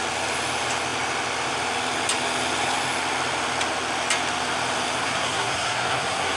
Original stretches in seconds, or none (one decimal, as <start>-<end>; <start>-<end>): 0.0-5.0